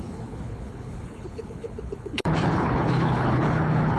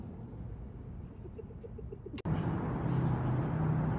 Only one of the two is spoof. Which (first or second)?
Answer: first